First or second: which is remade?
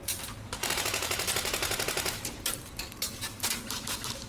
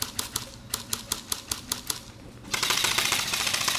first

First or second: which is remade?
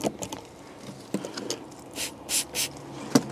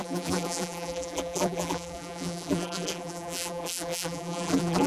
second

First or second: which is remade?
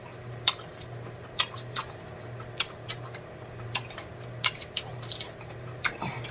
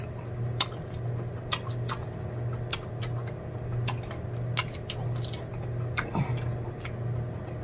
first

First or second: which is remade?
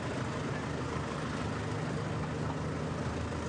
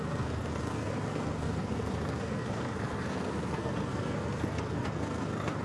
second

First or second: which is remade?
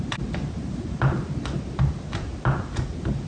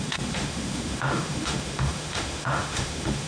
second